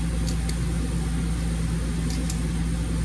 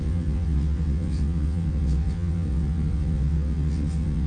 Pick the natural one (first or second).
first